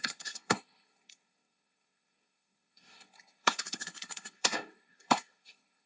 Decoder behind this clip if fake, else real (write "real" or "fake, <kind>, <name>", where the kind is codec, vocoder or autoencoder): fake, codec, SNAC